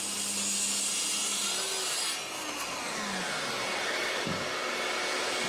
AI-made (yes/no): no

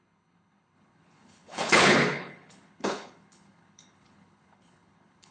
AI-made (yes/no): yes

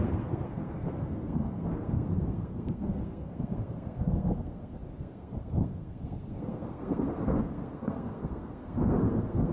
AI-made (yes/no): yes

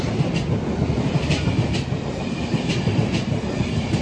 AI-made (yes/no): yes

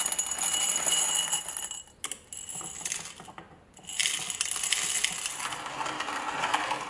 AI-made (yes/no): no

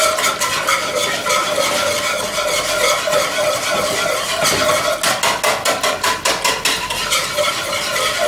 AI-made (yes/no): no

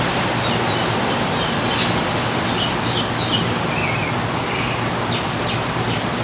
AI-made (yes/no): no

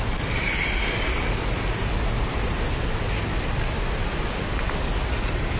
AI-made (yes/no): no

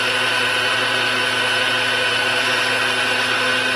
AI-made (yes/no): no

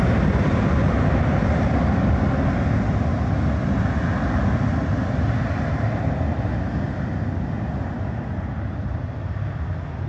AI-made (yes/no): no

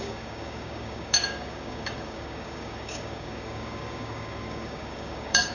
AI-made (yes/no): yes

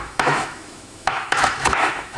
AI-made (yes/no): yes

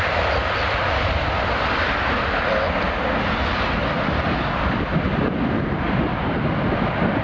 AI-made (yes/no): no